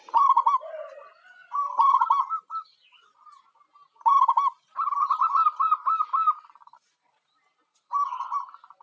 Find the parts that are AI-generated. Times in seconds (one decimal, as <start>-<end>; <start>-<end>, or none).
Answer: 0.0-1.4; 5.6-8.8